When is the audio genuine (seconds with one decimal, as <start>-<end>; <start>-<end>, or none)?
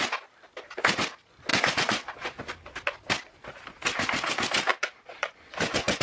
0.0-1.5; 2.4-4.7